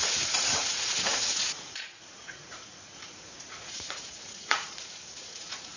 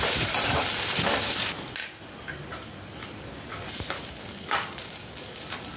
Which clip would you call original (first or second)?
second